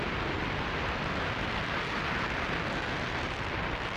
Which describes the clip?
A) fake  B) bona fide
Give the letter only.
B